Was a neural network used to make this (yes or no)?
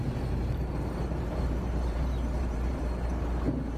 yes